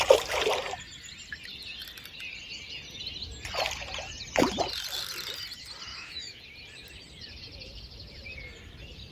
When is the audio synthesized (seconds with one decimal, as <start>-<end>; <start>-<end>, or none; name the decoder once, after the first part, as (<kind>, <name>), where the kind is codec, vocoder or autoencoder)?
5.9-6.4 (autoencoder, DAC-VAE)